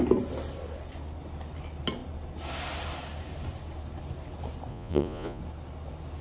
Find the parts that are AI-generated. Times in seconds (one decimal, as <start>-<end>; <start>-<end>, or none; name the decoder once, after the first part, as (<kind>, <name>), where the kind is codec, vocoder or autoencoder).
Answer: 4.7-5.4 (vocoder, Vocos)